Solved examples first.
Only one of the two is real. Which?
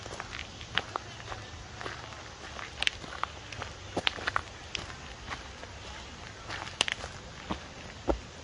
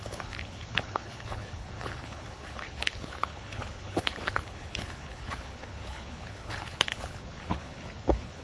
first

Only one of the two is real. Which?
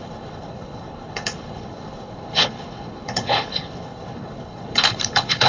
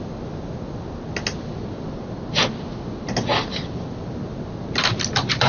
second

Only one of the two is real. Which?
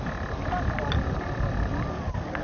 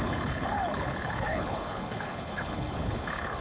first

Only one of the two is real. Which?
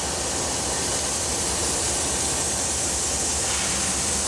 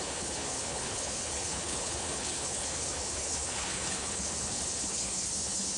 first